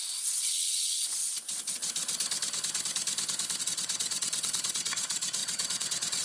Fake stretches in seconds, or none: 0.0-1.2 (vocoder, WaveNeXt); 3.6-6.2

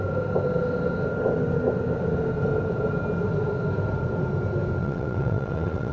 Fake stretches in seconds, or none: 4.8-5.9 (vocoder, WaveNeXt)

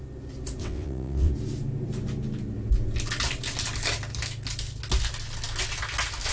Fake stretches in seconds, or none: 0.6-1.3 (vocoder, WaveNeXt)

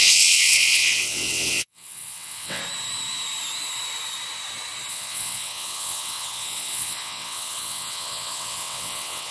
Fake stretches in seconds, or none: 0.0-2.6 (vocoder, WaveNeXt); 4.9-9.3